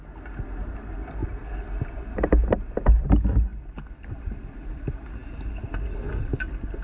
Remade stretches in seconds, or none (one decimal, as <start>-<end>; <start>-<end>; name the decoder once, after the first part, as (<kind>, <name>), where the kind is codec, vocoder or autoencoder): none